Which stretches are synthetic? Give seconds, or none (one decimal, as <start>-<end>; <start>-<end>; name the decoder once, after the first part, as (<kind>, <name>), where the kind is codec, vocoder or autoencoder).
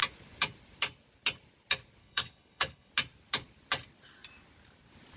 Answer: 2.0-2.9 (codec, HILCodec)